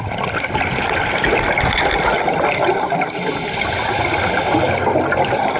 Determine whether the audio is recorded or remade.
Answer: recorded